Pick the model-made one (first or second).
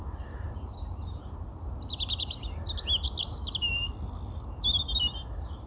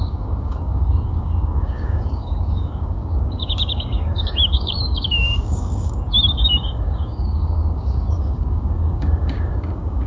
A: second